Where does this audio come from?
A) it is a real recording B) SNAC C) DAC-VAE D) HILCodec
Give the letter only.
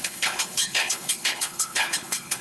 D